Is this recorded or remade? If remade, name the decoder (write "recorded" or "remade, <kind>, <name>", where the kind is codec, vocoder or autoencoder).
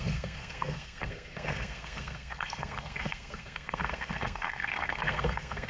remade, codec, SNAC